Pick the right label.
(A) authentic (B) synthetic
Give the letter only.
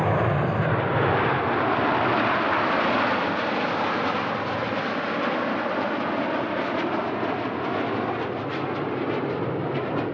A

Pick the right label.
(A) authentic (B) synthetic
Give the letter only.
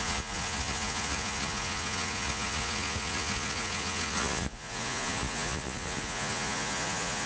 B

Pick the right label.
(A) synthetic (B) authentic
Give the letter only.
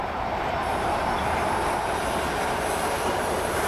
A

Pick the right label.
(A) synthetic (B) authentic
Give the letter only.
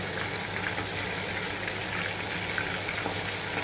B